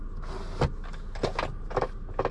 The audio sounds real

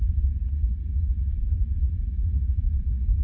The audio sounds fake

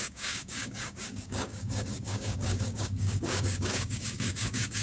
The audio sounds fake